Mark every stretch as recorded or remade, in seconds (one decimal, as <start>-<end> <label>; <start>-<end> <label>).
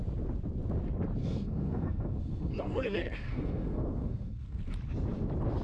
0.0-1.2 recorded; 1.2-4.6 remade; 4.6-5.6 recorded